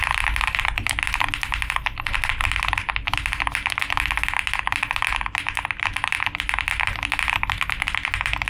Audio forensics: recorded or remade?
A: recorded